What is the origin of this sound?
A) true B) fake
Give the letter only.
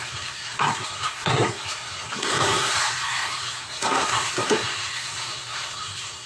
B